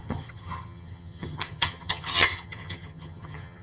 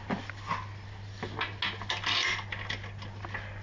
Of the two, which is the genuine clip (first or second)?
second